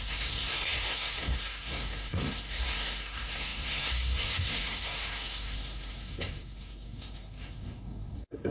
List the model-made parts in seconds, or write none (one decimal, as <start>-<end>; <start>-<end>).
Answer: 0.0-8.5